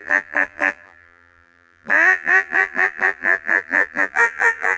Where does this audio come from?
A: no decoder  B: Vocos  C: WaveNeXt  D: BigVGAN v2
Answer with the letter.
D